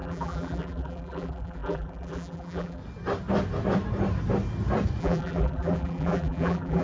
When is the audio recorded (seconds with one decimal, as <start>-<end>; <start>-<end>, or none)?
2.8-5.0